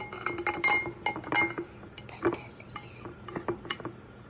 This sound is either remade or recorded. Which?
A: recorded